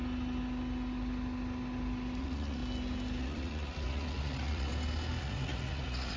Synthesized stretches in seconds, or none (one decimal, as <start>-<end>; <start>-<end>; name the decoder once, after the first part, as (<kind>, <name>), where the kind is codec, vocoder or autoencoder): 2.2-2.6 (vocoder, Vocos); 3.2-4.7; 5.2-6.2